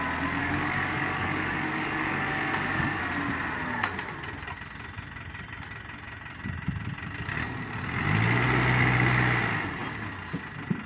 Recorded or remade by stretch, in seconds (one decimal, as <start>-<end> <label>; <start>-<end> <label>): 0.0-0.4 recorded; 0.4-3.0 remade; 3.0-10.9 recorded